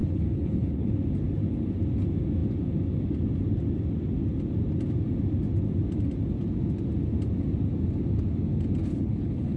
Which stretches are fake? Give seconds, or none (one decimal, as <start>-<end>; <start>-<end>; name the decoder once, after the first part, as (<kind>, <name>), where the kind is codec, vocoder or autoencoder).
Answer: 0.0-0.9 (codec, HILCodec); 8.9-9.6

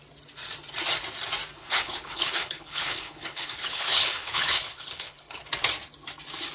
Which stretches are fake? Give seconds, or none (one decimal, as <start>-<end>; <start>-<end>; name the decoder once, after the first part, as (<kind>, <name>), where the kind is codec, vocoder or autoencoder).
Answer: 1.6-5.4 (codec, HILCodec)